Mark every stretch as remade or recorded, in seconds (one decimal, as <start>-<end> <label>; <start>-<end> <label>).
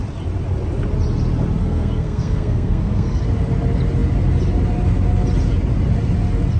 0.0-1.6 recorded; 1.6-3.2 remade; 3.2-6.6 recorded